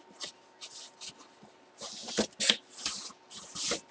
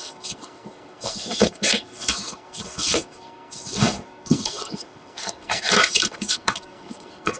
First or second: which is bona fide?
first